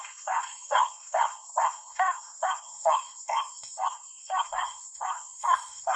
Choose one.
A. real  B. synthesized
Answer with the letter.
B